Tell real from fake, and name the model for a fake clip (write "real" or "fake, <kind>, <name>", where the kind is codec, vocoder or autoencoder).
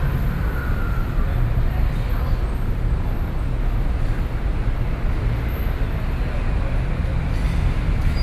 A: real